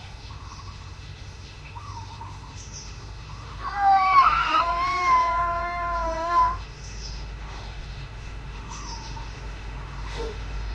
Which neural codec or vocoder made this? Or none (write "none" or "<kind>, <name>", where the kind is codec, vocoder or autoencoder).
autoencoder, DAC-VAE